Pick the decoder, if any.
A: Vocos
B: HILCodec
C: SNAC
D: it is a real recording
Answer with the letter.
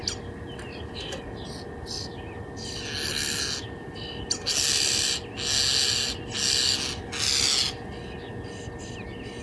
D